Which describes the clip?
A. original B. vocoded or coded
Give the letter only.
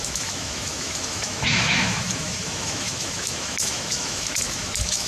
B